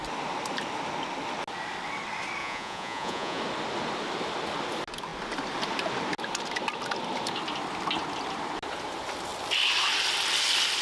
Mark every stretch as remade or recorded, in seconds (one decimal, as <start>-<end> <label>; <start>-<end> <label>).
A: 0.0-2.4 recorded; 2.4-3.4 remade; 3.4-10.8 recorded